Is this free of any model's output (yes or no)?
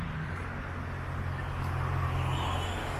yes